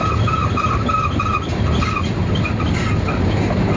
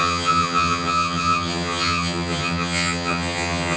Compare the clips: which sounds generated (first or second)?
second